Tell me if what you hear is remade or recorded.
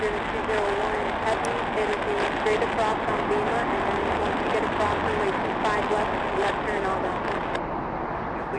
recorded